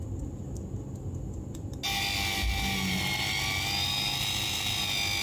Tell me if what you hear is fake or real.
real